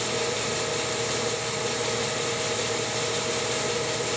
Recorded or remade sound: recorded